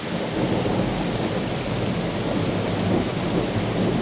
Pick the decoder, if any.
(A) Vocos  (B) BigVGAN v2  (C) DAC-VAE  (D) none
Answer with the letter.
D